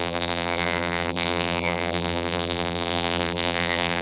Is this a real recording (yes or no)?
no